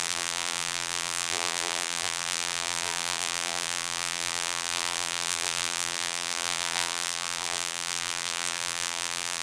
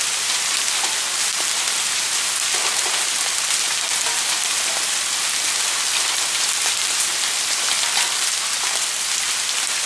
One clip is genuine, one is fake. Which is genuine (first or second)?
second